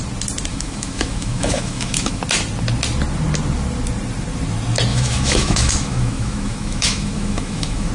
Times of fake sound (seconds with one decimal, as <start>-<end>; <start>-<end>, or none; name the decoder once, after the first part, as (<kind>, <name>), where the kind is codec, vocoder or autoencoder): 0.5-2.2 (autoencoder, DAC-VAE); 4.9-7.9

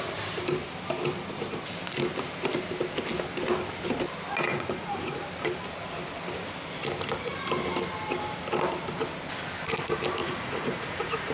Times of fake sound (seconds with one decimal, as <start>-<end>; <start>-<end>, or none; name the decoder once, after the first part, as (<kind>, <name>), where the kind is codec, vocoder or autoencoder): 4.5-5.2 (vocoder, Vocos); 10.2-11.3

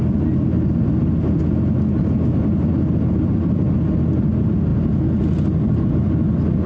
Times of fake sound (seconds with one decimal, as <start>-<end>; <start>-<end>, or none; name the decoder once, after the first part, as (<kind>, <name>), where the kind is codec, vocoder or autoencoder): none

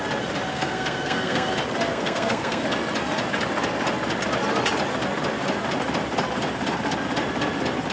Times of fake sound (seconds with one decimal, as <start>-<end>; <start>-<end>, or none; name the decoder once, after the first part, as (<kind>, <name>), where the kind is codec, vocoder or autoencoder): 0.5-1.5 (codec, SNAC); 1.9-2.6

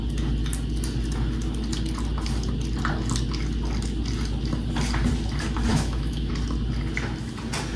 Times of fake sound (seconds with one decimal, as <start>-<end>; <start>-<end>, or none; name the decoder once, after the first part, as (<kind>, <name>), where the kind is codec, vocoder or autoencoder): 5.7-6.3 (autoencoder, DAC-VAE)